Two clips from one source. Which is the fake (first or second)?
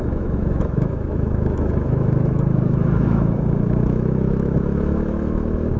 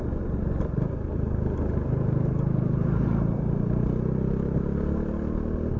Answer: first